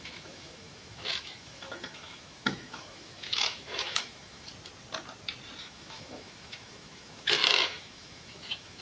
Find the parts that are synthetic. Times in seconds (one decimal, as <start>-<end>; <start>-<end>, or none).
0.0-4.5; 5.6-8.8